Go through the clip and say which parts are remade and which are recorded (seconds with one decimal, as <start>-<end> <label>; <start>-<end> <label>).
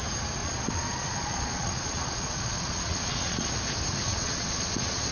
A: 0.0-0.4 recorded; 0.4-3.5 remade; 3.5-4.1 recorded; 4.1-5.1 remade